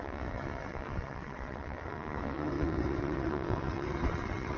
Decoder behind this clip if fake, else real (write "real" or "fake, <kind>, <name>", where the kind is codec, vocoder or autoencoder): fake, vocoder, WaveNeXt